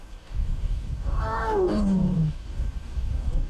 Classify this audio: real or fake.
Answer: fake